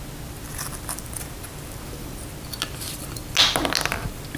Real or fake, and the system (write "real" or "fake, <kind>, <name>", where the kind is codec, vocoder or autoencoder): real